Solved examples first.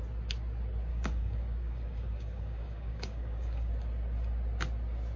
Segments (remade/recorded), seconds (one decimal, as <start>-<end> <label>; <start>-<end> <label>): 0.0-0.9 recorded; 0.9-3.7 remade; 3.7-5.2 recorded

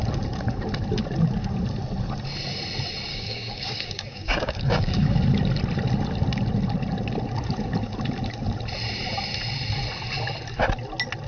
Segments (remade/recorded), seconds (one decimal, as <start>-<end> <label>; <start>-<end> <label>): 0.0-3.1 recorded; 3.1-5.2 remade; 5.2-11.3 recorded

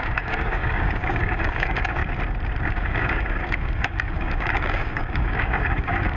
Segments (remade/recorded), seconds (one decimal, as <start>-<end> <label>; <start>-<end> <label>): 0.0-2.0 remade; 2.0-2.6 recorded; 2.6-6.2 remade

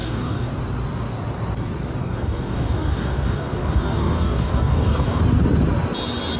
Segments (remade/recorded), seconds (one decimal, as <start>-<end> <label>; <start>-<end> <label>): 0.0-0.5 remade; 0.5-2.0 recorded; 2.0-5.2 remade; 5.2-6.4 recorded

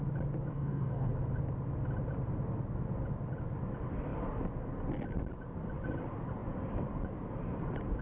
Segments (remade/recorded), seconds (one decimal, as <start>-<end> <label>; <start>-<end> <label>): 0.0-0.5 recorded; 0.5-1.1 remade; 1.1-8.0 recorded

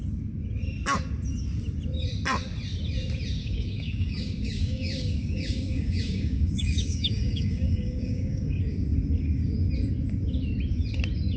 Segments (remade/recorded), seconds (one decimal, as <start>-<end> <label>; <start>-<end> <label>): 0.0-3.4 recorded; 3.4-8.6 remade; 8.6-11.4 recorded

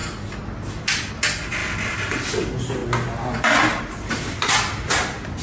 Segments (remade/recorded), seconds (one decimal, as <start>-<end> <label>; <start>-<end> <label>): 0.0-5.4 recorded

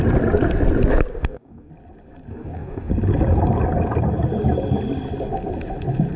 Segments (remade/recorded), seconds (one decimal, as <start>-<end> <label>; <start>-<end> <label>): 0.0-1.1 recorded; 1.1-1.7 remade; 1.7-2.3 recorded; 2.3-2.9 remade; 2.9-6.2 recorded